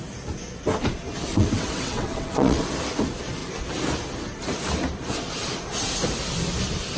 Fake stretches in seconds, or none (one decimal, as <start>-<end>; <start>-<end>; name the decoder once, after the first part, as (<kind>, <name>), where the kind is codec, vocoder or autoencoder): 1.3-2.7 (vocoder, WaveNeXt)